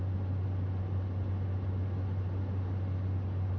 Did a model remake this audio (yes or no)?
no